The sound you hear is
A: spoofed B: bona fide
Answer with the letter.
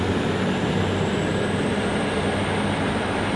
B